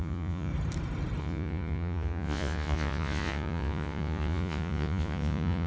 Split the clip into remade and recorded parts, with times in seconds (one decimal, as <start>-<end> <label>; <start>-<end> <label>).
0.0-0.5 remade; 0.5-1.2 recorded; 1.2-5.7 remade